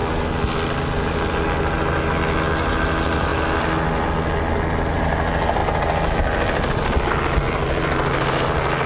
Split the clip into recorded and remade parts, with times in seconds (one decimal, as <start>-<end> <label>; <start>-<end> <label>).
0.0-8.9 recorded